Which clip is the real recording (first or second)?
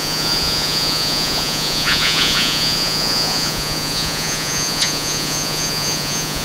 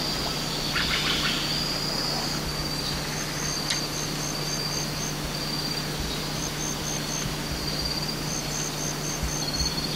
second